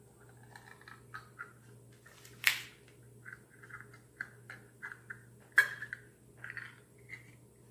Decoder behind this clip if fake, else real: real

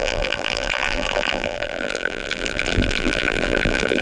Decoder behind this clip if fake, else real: fake, vocoder, BigVGAN v2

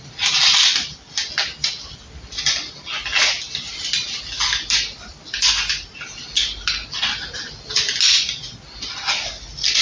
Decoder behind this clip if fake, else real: real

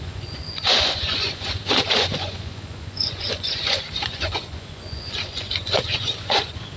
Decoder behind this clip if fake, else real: fake, vocoder, Vocos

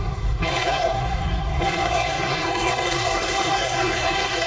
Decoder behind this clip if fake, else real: fake, codec, SNAC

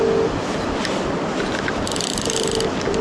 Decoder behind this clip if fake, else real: real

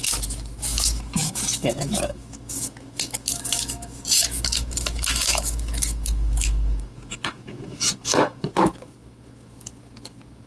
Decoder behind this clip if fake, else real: fake, autoencoder, DAC-VAE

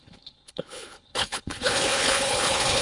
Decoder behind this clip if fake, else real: fake, codec, HILCodec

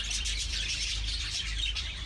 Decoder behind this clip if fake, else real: fake, vocoder, BigVGAN v2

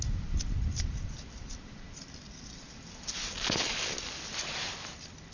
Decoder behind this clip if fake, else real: real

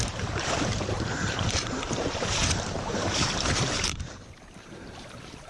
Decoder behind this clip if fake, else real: fake, vocoder, BigVGAN v2